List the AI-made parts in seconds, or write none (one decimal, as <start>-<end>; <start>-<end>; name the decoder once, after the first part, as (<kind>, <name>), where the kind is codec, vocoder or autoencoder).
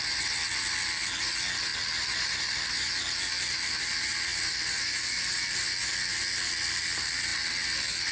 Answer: none